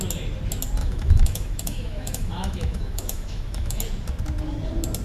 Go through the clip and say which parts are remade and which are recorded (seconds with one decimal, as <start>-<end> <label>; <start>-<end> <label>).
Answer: 0.0-0.8 recorded; 0.8-3.8 remade; 3.8-5.0 recorded